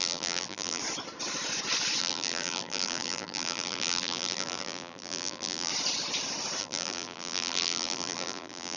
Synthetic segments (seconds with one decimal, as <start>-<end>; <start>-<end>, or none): 0.0-0.8; 2.0-5.7; 6.6-8.8